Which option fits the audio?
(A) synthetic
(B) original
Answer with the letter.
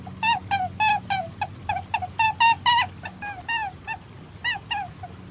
B